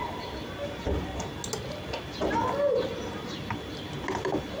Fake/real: real